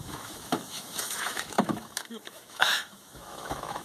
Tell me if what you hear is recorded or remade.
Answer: remade